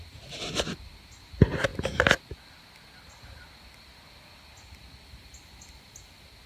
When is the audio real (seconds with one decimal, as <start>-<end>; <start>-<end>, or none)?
0.0-6.5